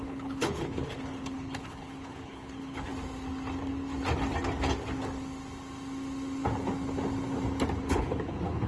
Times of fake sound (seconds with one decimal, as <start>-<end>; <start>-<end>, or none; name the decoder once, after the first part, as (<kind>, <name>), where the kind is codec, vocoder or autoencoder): 0.0-2.9 (codec, HILCodec); 7.8-8.7